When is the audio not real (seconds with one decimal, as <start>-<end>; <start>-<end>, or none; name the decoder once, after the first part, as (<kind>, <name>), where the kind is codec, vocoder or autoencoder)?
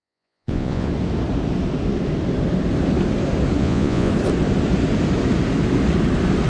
0.0-0.9 (vocoder, Vocos); 3.6-4.1